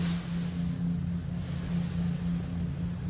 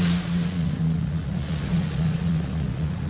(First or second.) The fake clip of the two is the second